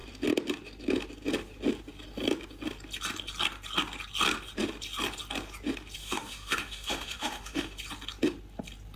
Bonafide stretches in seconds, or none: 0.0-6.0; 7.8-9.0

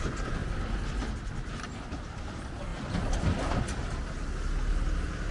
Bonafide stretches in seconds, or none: 0.0-5.3

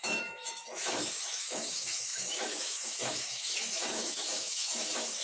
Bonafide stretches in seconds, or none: none

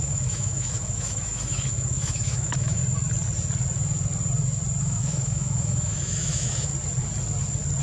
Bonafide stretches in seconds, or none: 2.8-4.8; 6.7-7.8